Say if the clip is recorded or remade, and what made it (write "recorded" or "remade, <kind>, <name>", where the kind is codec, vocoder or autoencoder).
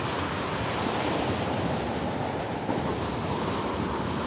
remade, vocoder, BigVGAN v2